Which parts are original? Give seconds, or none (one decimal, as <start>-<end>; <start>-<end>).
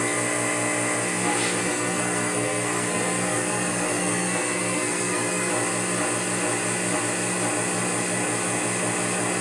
0.0-1.6; 5.5-9.4